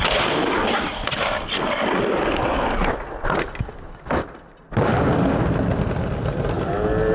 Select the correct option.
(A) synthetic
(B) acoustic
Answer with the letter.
B